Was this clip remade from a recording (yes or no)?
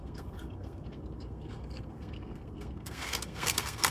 yes